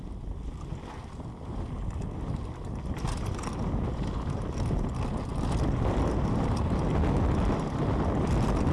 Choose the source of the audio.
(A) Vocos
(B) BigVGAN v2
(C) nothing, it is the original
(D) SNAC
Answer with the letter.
C